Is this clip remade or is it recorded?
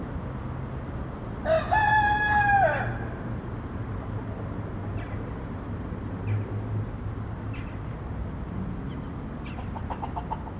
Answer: recorded